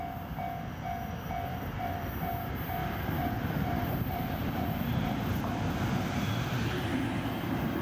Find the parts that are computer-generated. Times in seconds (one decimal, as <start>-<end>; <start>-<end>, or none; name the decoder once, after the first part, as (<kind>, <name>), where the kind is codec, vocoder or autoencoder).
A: 1.5-2.1 (vocoder, BigVGAN v2); 2.8-5.4